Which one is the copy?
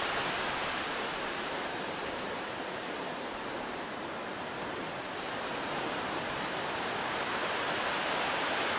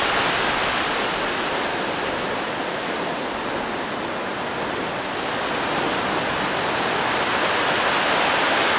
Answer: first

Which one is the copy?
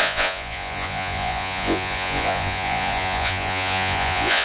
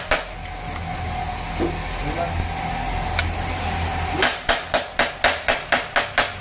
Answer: first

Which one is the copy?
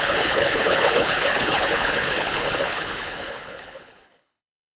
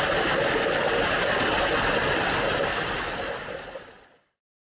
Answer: first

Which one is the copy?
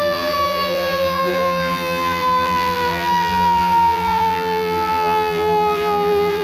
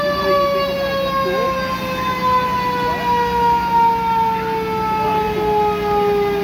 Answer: first